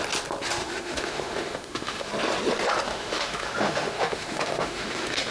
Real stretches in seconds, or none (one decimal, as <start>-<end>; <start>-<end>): 0.0-0.6; 2.1-2.9